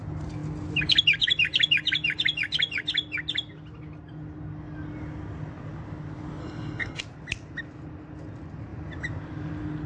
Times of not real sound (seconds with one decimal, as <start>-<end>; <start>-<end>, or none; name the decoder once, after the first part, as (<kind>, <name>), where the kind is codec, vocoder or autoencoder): 6.4-7.0 (codec, SNAC)